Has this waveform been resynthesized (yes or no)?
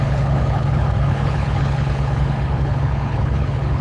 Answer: yes